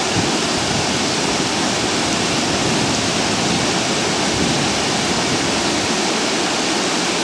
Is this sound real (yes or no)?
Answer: yes